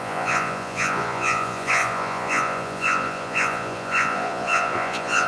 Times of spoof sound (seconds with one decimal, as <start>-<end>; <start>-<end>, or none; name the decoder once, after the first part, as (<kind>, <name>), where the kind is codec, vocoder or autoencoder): 0.0-5.3 (vocoder, Vocos)